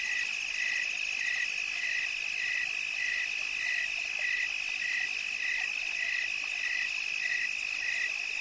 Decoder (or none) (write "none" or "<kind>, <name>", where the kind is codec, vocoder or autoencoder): none